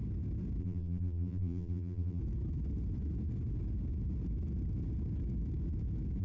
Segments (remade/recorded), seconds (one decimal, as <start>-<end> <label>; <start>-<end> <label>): 0.0-0.6 recorded; 0.6-2.2 remade; 2.2-6.2 recorded